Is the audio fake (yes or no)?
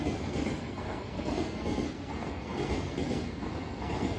yes